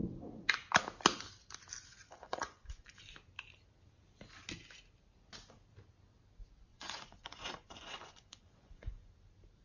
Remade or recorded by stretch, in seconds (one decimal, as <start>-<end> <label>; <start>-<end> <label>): 0.0-1.9 recorded; 1.9-3.0 remade; 3.0-6.7 recorded; 6.7-9.1 remade; 9.1-9.6 recorded